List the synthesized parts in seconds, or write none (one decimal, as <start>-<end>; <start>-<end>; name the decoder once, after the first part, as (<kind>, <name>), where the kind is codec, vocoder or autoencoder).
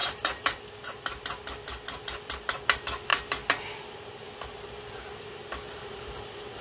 0.0-0.6 (vocoder, BigVGAN v2)